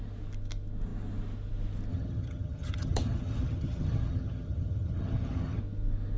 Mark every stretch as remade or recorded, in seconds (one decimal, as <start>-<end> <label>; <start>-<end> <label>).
0.0-1.9 recorded; 1.9-5.6 remade; 5.6-6.2 recorded